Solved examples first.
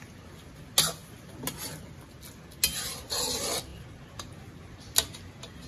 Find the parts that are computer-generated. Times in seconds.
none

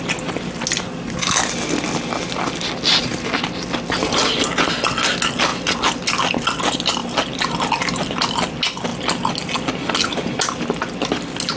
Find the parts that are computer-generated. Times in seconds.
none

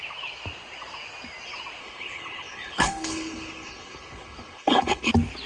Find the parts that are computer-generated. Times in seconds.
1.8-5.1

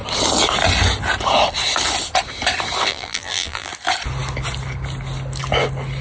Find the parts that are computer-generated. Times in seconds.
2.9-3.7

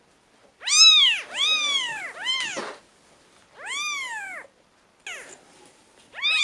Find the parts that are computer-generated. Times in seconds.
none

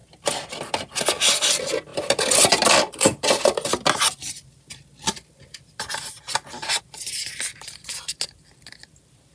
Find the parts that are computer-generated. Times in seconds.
none

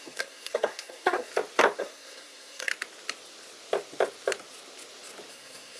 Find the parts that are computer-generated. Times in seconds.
0.0-1.3; 1.8-2.7; 5.3-5.8